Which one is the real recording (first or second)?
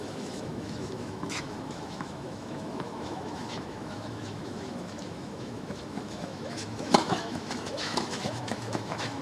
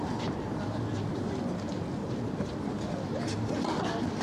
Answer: second